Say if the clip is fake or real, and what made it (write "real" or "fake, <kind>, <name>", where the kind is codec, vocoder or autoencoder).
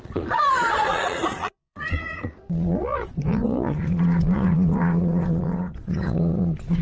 fake, vocoder, Vocos